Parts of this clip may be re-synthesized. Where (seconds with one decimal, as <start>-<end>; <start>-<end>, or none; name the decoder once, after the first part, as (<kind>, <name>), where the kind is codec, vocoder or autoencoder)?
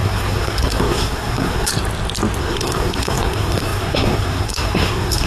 0.0-1.7 (codec, SNAC); 2.4-5.3